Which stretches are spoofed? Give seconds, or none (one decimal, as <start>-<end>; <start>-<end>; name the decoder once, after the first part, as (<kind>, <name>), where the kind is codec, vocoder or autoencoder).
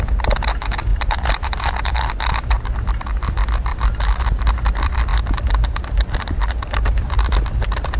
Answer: 0.9-2.7 (vocoder, BigVGAN v2); 3.7-4.5